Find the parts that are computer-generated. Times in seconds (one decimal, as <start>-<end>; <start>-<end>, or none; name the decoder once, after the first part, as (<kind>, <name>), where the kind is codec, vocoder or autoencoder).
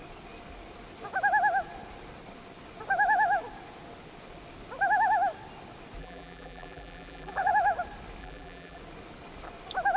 6.0-7.5 (vocoder, BigVGAN v2); 8.2-8.8